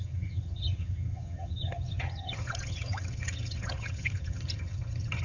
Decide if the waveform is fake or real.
fake